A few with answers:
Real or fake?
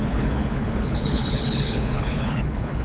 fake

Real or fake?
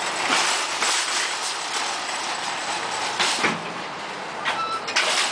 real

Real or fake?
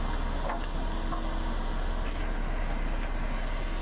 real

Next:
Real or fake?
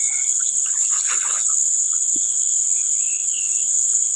fake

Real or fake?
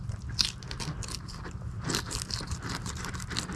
real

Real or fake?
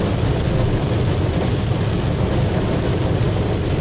real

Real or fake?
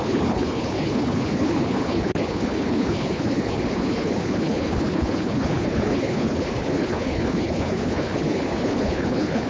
fake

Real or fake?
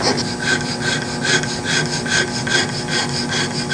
real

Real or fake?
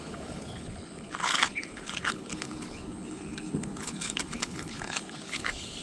fake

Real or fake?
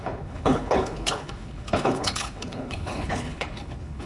fake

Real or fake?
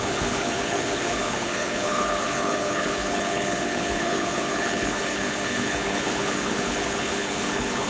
fake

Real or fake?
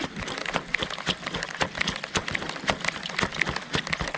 real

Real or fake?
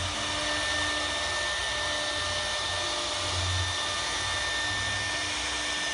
real